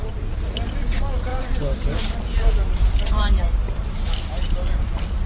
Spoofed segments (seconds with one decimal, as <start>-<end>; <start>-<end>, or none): 1.3-3.5